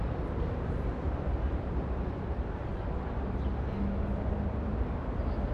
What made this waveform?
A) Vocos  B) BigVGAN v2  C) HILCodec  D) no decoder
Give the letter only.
D